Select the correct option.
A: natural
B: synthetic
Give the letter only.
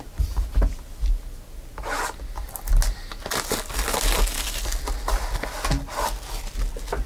A